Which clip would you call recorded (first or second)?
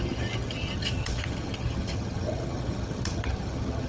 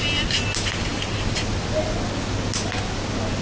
second